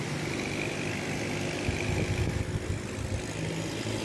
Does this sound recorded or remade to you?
recorded